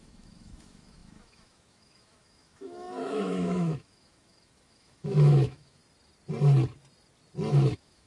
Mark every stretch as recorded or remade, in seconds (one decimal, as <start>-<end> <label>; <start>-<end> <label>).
0.0-5.8 remade; 5.8-7.5 recorded; 7.5-8.1 remade